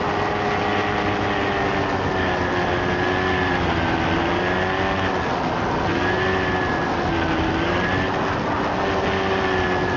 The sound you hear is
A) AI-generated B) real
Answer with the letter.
B